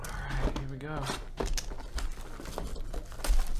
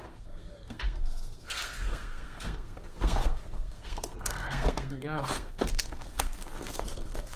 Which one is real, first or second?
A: first